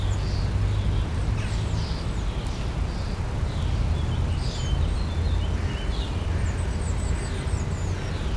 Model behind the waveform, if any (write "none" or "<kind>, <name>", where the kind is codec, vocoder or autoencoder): none